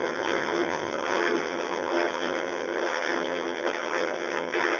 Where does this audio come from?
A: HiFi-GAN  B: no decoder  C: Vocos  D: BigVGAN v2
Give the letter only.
A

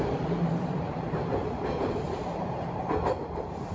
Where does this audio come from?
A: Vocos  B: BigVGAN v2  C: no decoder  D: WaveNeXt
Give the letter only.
B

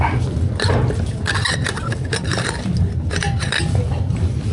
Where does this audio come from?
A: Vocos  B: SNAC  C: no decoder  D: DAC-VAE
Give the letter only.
C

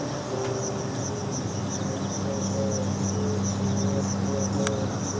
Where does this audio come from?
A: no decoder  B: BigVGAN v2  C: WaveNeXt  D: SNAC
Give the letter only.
A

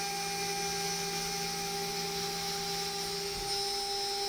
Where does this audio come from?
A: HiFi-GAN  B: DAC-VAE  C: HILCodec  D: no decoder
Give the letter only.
D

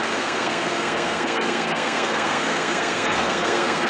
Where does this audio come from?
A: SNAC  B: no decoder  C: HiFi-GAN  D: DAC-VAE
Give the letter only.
A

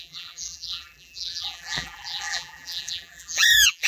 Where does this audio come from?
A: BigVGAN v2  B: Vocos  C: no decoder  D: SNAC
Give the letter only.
A